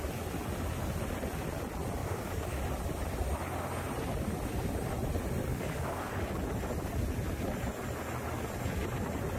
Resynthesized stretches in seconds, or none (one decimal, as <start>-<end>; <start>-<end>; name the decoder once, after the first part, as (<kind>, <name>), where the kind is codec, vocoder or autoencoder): 2.0-2.6 (codec, DAC); 5.5-6.1